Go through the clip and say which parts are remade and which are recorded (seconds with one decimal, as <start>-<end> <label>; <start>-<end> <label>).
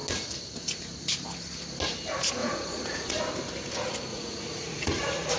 0.0-2.4 recorded; 2.4-3.1 remade; 3.1-4.1 recorded; 4.1-5.4 remade